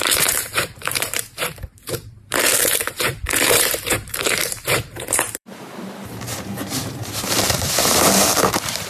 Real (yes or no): no